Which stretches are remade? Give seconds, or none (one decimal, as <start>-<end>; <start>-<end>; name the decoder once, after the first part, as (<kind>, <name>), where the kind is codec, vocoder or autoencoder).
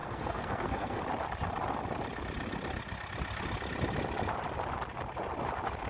0.0-1.0 (codec, SNAC)